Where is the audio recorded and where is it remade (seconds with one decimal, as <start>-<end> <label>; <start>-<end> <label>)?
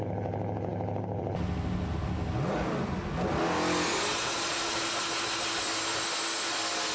0.0-6.9 recorded